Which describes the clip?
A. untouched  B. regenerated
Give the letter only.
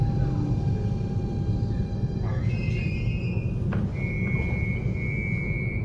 A